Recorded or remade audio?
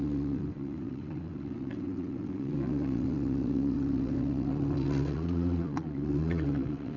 remade